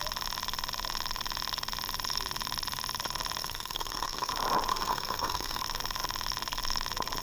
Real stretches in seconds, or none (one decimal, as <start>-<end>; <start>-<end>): 0.0-3.4; 4.3-4.7; 5.6-7.2